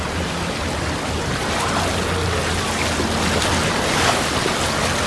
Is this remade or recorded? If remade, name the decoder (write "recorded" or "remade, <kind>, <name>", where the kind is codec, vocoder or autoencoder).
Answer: recorded